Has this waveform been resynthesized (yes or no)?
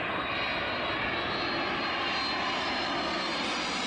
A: no